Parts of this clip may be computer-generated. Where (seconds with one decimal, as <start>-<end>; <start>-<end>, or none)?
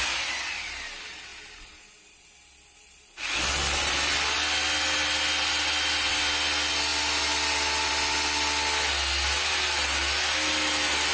none